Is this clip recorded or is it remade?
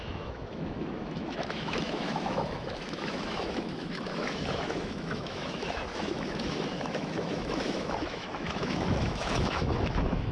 remade